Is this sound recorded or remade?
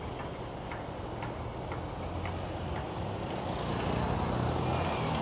recorded